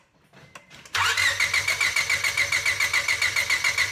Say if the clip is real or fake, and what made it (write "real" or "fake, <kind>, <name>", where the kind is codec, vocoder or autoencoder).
real